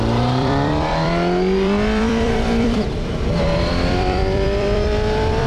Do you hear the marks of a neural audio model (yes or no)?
yes